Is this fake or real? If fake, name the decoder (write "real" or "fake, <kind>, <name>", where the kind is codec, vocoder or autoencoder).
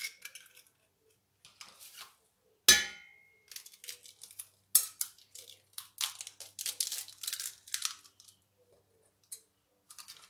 real